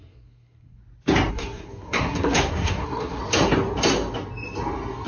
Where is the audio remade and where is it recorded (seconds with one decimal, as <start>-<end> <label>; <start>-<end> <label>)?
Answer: 0.0-0.8 remade; 0.8-1.3 recorded; 1.3-3.2 remade; 3.2-5.1 recorded